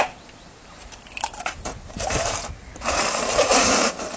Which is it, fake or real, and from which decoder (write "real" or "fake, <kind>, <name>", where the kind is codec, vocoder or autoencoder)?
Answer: fake, vocoder, BigVGAN v2